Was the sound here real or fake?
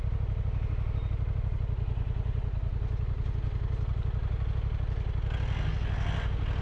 real